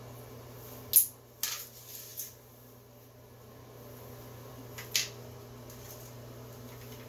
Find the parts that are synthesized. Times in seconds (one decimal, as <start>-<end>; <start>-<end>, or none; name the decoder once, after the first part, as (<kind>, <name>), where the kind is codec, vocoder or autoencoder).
none